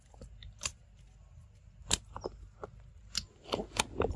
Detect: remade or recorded recorded